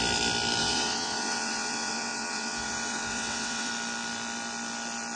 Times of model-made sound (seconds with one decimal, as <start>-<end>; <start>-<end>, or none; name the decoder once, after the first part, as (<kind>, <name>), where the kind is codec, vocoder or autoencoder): 0.6-3.7 (vocoder, WaveNeXt)